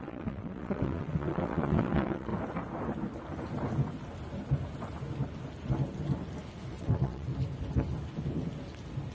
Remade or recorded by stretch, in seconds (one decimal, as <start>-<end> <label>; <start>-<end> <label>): 0.0-2.3 remade; 2.3-6.8 recorded; 6.8-7.3 remade; 7.3-9.1 recorded